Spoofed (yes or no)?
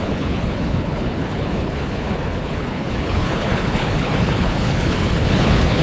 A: yes